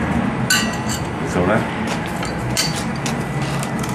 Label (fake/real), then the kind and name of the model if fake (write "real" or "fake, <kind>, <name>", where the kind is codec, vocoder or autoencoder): real